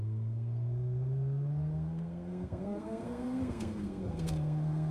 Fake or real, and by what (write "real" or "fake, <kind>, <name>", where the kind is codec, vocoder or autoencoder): fake, codec, SNAC